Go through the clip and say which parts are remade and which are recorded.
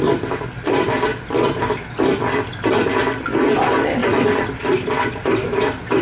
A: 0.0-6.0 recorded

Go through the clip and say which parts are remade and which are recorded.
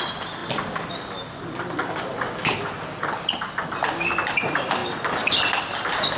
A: 0.0-6.2 recorded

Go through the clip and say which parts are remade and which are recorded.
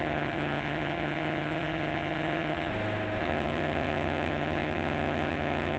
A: 0.0-2.7 remade; 2.7-3.2 recorded; 3.2-5.8 remade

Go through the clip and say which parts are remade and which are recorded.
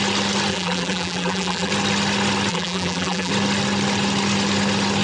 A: 0.0-0.5 recorded; 0.5-1.7 remade; 1.7-2.5 recorded; 2.5-3.3 remade; 3.3-5.0 recorded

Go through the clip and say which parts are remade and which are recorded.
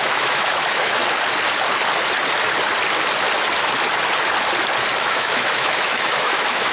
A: 0.0-1.0 remade; 1.0-5.0 recorded; 5.0-6.7 remade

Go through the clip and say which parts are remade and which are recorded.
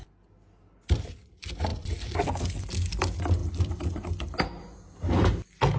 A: 0.0-5.8 recorded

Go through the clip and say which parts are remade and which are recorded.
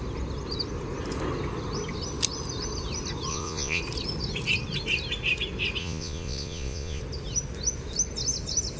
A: 0.0-3.3 recorded; 3.3-3.8 remade; 3.8-5.8 recorded; 5.8-7.0 remade; 7.0-8.8 recorded